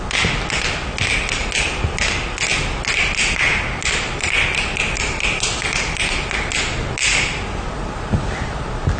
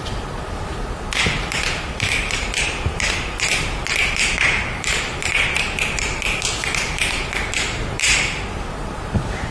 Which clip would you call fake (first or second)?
second